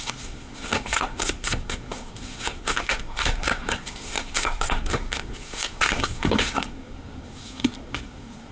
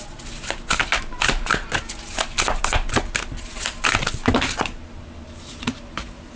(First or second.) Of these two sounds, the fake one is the first